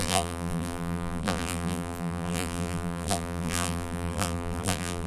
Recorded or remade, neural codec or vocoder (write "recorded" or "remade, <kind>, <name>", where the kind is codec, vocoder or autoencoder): remade, vocoder, BigVGAN v2